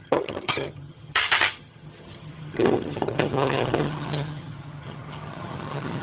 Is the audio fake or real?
fake